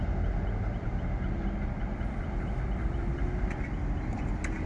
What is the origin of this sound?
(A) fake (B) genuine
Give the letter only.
B